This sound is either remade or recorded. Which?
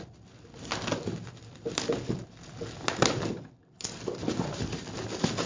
recorded